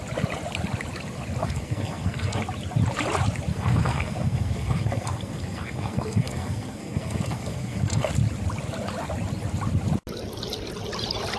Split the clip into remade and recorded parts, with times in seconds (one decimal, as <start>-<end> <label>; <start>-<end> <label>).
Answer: 0.0-1.4 recorded; 1.4-2.4 remade; 2.4-3.5 recorded; 3.5-8.1 remade; 8.1-11.4 recorded